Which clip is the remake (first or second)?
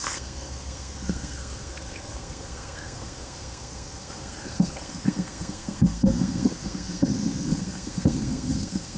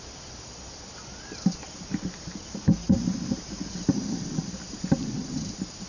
first